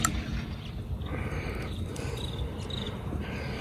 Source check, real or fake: fake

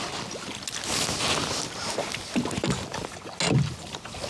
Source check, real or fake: real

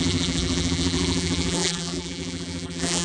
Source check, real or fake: fake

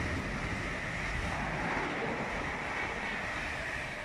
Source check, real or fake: real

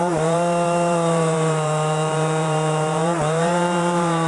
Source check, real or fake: fake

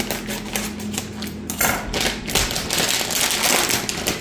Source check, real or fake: real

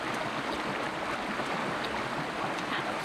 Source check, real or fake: real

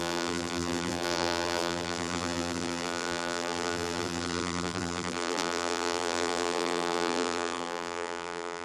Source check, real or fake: fake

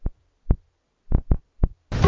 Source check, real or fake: real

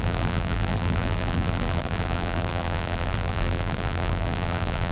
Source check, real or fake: fake